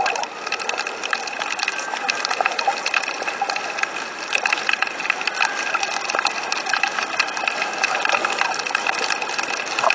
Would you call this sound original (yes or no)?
yes